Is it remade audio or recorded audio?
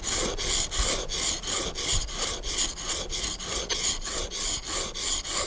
recorded